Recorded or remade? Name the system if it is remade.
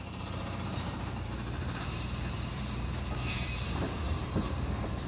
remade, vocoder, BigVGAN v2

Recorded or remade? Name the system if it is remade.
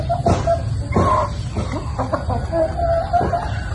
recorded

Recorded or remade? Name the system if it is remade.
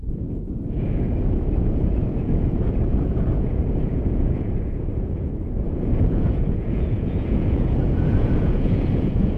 remade, vocoder, Vocos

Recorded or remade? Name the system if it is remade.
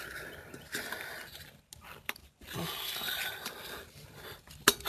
recorded